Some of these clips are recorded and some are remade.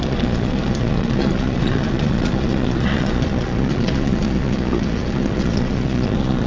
remade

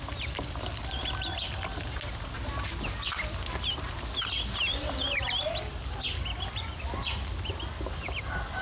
recorded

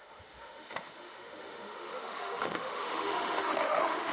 remade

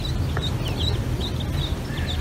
recorded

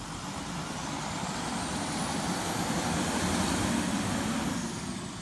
remade